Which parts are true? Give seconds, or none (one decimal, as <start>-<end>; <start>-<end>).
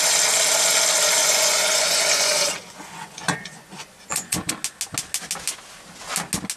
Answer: 0.0-1.2; 4.5-6.6